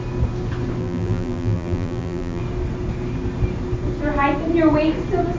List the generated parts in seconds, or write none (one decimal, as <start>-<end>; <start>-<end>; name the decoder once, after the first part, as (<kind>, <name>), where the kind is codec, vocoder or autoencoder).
0.8-2.4 (vocoder, BigVGAN v2)